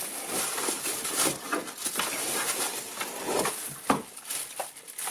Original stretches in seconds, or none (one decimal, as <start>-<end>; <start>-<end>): 0.0-5.1